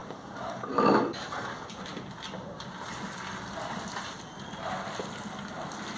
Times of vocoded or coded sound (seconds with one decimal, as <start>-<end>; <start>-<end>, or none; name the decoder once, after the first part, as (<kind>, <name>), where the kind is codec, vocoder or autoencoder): 0.0-0.7 (codec, DAC)